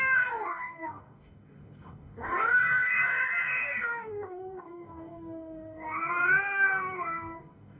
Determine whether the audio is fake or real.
fake